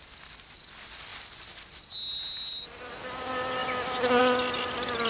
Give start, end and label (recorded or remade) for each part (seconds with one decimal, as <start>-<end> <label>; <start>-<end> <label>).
0.0-5.1 recorded